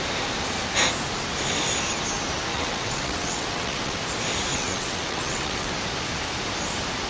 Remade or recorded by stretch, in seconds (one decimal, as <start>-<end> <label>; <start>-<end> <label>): 0.0-2.5 recorded; 2.5-4.0 remade; 4.0-4.5 recorded; 4.5-5.7 remade; 5.7-7.1 recorded